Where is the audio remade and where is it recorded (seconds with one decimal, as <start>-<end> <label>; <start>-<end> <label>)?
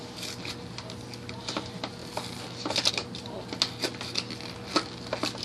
0.0-5.4 recorded